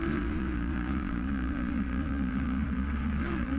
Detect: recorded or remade remade